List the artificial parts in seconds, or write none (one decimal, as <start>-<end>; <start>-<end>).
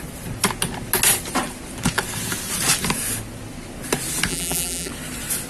4.3-4.9